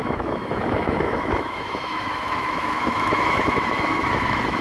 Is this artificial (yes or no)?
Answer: yes